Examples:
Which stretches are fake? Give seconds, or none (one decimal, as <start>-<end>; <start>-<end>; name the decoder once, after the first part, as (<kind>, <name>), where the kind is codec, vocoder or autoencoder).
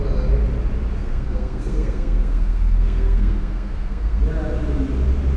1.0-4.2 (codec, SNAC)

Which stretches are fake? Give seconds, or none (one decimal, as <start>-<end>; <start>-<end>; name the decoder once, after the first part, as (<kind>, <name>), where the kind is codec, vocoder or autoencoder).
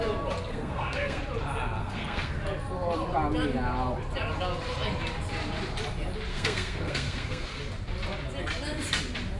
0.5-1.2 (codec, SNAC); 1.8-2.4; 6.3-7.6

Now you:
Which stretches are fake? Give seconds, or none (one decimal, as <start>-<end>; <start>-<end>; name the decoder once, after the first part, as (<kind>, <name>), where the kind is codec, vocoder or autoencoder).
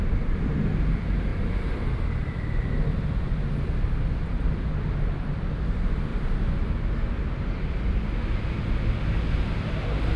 none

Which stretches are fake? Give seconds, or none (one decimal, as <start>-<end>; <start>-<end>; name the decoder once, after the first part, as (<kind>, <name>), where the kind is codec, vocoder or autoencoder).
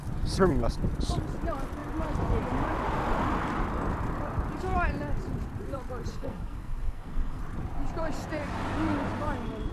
6.1-7.4 (codec, SNAC)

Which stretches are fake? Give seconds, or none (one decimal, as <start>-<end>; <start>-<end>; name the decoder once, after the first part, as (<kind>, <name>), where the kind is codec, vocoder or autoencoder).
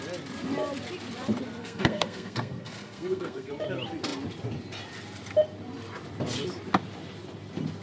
1.6-3.5 (codec, SNAC)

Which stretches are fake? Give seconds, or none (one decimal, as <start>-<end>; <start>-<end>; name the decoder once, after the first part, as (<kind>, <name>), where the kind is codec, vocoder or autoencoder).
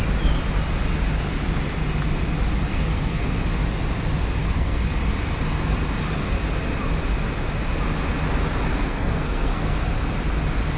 2.7-3.4 (codec, SNAC); 4.4-5.0; 8.7-9.9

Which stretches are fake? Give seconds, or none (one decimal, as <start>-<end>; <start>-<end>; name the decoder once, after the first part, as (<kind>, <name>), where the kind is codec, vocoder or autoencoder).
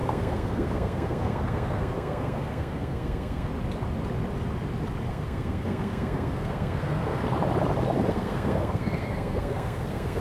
0.0-3.5 (codec, SNAC); 5.1-7.2; 8.1-10.2